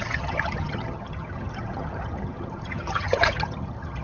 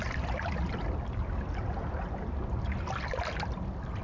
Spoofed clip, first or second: first